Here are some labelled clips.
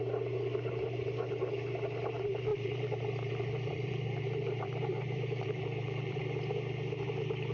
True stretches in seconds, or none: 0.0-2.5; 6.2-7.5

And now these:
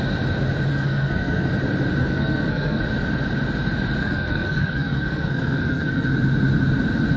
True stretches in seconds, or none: 0.0-0.7; 1.5-2.0; 2.8-4.0; 6.1-7.2

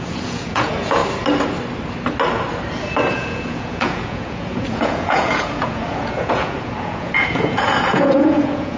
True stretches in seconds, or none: 1.0-3.1

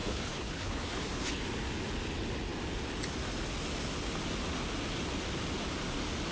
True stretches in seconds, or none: 1.4-6.3

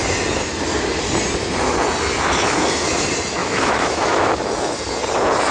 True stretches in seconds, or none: 0.0-3.4; 4.4-5.5

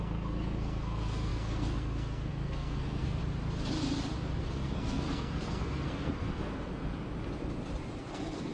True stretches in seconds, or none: 3.2-4.4; 6.9-8.0